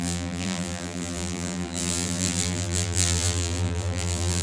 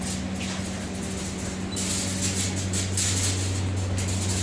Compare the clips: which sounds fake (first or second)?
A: first